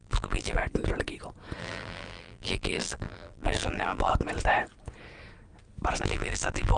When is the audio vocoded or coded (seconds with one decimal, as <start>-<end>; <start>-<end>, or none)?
0.0-0.6; 1.6-4.1; 6.0-6.8